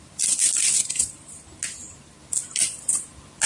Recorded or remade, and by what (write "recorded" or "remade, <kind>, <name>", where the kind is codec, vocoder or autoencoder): recorded